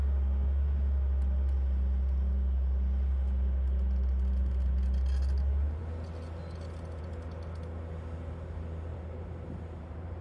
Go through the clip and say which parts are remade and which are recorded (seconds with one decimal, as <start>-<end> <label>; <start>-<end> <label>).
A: 0.0-8.9 recorded; 8.9-10.2 remade